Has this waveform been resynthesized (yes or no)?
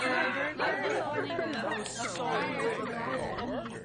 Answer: no